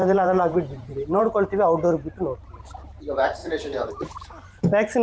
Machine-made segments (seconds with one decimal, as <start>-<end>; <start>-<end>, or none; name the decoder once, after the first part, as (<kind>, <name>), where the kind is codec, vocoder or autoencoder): 0.0-1.2 (vocoder, Vocos); 3.4-3.9